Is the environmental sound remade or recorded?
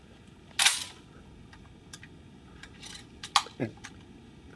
recorded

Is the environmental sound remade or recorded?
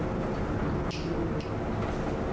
recorded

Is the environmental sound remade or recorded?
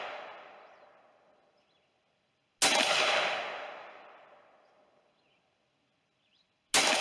recorded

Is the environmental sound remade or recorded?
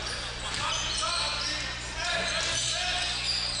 recorded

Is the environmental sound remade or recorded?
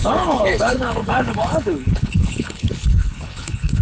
remade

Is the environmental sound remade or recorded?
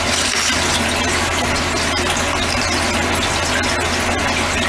recorded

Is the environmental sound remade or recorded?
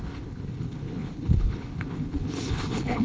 remade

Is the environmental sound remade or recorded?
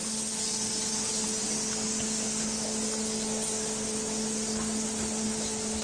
recorded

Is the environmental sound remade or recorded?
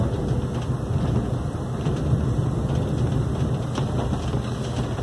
recorded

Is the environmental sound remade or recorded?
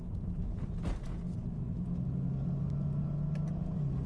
recorded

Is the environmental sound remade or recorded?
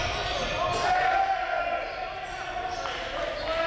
recorded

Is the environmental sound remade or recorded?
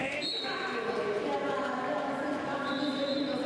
recorded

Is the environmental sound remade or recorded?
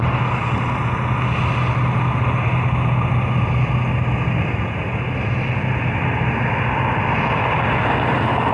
recorded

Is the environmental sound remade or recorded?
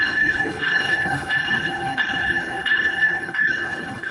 remade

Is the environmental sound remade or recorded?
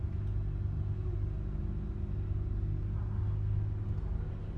recorded